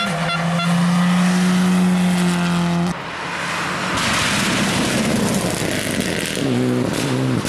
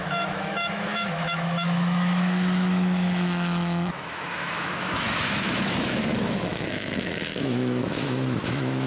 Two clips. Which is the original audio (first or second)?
first